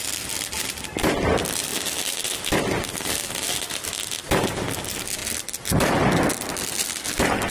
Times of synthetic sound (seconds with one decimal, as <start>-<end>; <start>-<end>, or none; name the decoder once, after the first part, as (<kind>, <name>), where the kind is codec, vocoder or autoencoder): 5.2-6.9 (vocoder, BigVGAN v2)